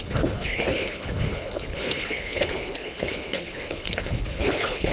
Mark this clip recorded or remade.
remade